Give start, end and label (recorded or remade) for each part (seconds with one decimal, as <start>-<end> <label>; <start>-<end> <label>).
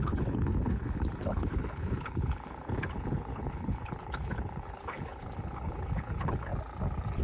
0.0-6.5 remade; 6.5-7.2 recorded